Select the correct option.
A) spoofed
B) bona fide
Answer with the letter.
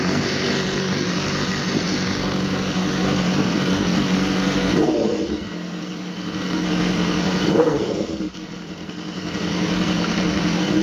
A